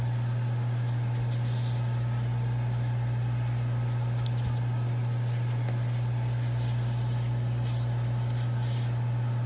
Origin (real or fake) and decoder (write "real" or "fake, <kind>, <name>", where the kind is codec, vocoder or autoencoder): real